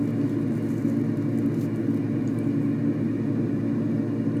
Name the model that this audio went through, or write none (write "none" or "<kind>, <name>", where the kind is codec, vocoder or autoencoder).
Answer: none